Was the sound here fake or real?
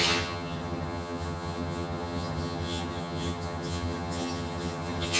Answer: fake